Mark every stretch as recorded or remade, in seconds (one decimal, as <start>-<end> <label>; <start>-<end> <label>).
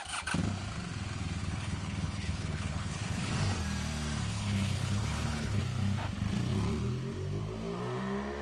0.0-1.4 recorded; 1.4-3.3 remade; 3.3-4.3 recorded; 4.3-5.6 remade; 5.6-8.4 recorded